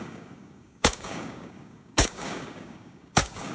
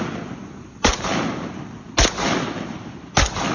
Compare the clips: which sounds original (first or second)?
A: second